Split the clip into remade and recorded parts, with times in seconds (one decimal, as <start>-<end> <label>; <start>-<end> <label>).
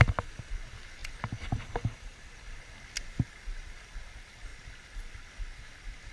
0.0-6.1 recorded